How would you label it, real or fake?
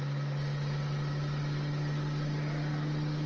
real